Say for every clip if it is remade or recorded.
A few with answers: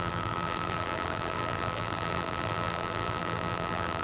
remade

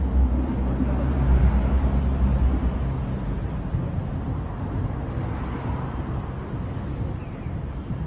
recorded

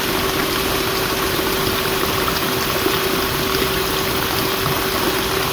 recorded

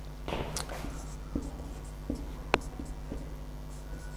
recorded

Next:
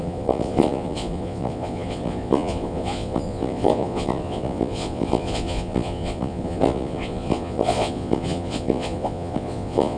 remade